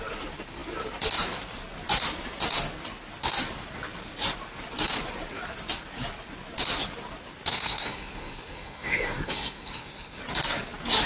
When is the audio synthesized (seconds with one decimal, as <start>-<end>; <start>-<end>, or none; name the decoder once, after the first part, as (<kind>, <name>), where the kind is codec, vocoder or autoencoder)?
7.5-10.2 (codec, SNAC)